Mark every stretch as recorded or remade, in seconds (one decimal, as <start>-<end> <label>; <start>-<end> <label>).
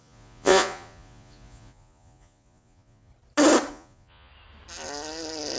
0.0-3.1 remade; 3.1-3.7 recorded; 3.7-4.3 remade; 4.3-5.6 recorded